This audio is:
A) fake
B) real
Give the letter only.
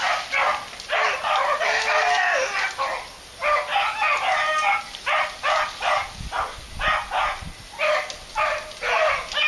B